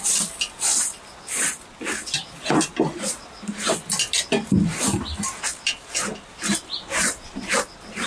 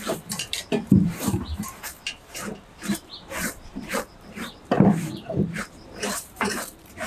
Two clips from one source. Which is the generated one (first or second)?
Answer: second